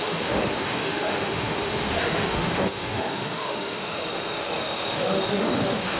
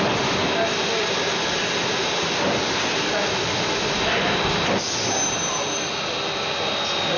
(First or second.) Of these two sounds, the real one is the second